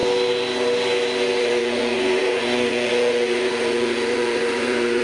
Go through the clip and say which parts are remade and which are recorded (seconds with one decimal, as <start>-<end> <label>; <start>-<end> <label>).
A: 0.0-1.4 recorded; 1.4-5.0 remade